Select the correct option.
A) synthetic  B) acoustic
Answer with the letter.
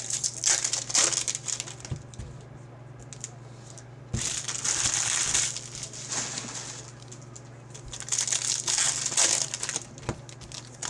B